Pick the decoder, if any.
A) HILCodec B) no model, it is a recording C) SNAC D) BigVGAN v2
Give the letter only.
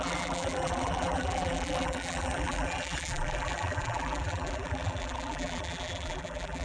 D